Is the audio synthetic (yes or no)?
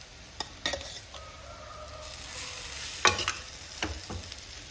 no